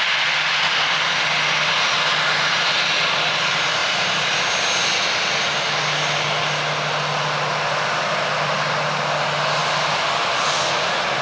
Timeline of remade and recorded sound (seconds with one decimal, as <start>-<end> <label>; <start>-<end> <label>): 0.0-11.2 recorded